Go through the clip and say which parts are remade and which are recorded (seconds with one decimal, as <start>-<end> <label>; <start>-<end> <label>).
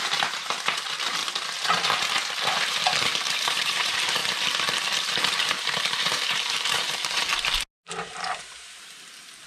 0.0-1.2 remade; 1.2-3.1 recorded; 3.1-4.2 remade; 4.2-5.0 recorded; 5.0-7.3 remade; 7.3-7.8 recorded; 7.8-9.5 remade